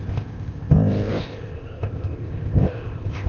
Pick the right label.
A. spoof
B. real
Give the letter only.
A